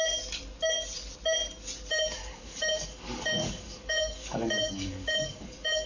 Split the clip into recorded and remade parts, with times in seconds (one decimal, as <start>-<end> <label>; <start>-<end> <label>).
0.0-2.2 recorded; 2.2-5.9 remade